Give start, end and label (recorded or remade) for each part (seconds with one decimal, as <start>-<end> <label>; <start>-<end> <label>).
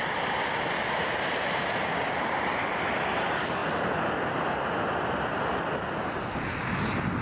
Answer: 0.0-7.2 recorded